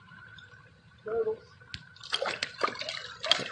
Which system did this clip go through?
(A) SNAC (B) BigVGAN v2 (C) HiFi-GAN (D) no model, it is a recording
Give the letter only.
D